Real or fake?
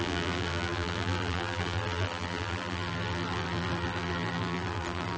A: fake